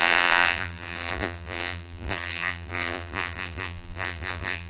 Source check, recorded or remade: remade